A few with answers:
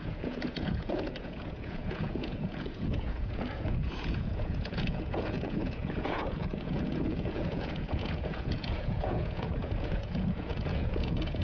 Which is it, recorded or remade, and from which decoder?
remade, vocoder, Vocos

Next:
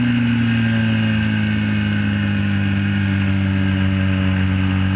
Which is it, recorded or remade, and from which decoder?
recorded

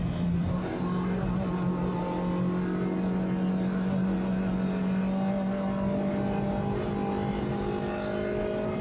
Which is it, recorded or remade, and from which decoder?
recorded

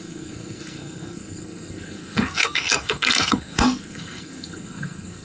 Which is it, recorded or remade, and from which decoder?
remade, codec, SNAC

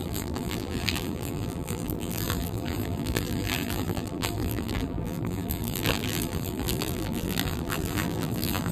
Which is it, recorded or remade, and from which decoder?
remade, vocoder, BigVGAN v2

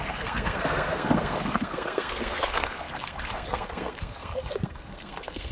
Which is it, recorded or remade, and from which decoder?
remade, codec, SNAC